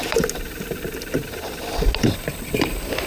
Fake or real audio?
real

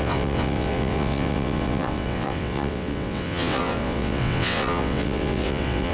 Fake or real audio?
fake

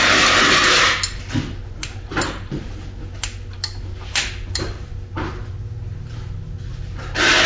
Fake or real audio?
real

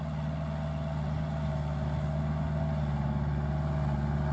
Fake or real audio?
real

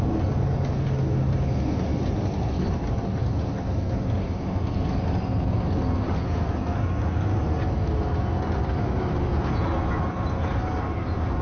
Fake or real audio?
real